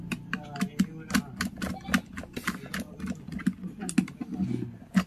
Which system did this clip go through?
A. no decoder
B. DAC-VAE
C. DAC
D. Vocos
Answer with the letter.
A